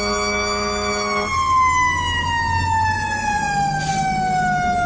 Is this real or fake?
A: real